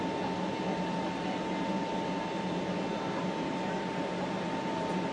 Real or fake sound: real